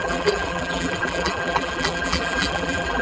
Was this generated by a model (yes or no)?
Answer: yes